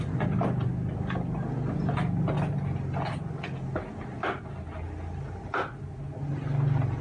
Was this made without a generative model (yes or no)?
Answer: yes